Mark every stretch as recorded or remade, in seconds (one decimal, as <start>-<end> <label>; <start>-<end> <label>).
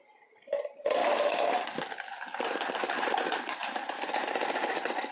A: 0.0-1.0 remade; 1.0-1.9 recorded; 1.9-5.1 remade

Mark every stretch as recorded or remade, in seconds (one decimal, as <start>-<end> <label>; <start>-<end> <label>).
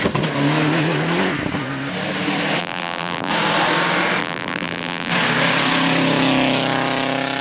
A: 0.0-2.6 recorded; 2.6-3.3 remade; 3.3-4.2 recorded; 4.2-5.1 remade; 5.1-7.4 recorded